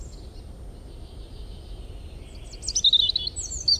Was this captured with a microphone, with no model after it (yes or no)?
yes